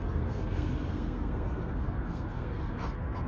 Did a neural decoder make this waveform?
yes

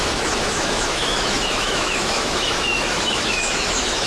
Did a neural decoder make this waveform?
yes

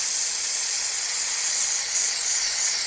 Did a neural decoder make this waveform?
yes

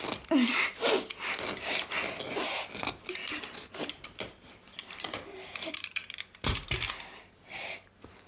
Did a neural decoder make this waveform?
yes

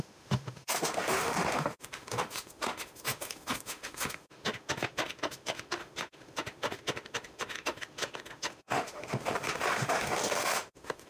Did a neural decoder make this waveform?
yes